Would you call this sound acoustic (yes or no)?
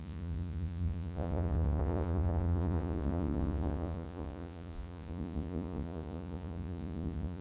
no